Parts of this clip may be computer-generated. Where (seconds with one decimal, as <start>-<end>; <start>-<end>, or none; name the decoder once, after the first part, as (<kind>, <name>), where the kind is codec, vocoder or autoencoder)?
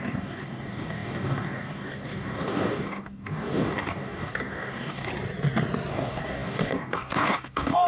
0.0-5.1 (codec, DAC); 5.9-7.9